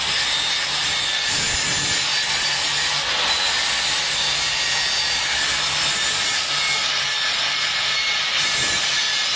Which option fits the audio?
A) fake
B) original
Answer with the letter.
B